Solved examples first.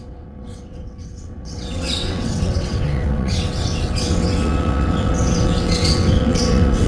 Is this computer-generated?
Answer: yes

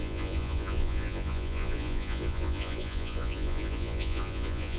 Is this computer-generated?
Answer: yes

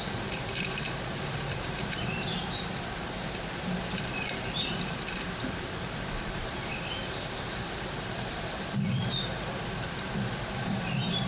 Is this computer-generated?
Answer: yes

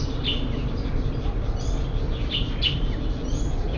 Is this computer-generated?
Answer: no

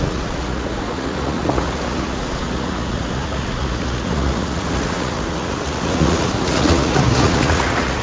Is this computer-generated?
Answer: yes